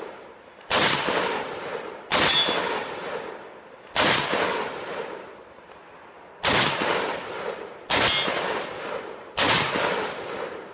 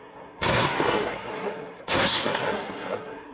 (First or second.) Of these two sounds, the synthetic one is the second